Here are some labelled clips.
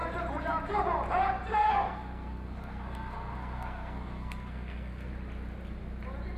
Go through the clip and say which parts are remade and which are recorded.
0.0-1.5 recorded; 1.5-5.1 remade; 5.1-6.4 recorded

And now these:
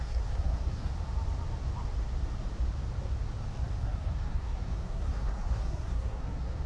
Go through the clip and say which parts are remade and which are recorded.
0.0-0.9 remade; 0.9-3.8 recorded; 3.8-6.7 remade

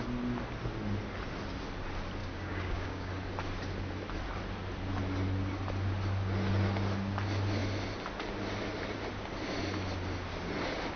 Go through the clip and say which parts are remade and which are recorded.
0.0-2.2 recorded; 2.2-3.1 remade; 3.1-11.0 recorded

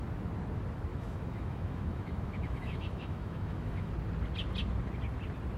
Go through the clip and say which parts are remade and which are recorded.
0.0-0.9 recorded; 0.9-3.9 remade; 3.9-5.6 recorded

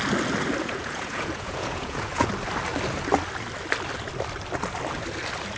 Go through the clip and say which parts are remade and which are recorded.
0.0-0.6 recorded; 0.6-2.3 remade; 2.3-5.6 recorded

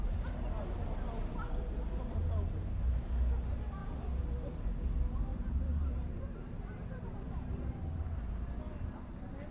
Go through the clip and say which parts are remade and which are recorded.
0.0-3.8 recorded; 3.8-4.7 remade; 4.7-5.3 recorded; 5.3-7.8 remade; 7.8-9.5 recorded